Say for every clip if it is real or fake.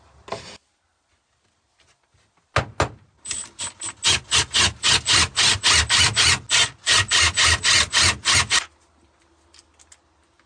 real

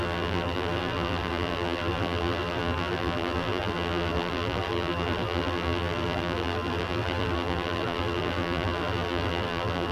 fake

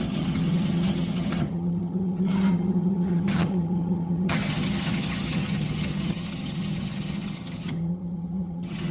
fake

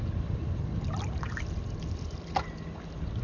real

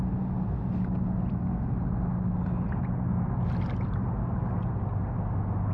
real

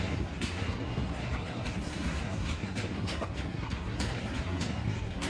fake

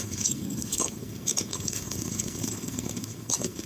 fake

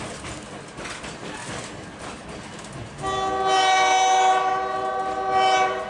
real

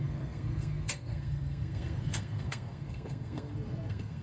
fake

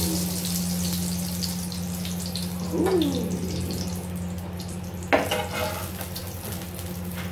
real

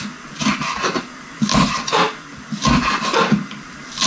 real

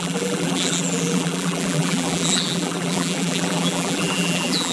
fake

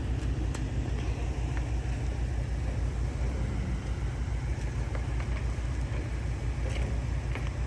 real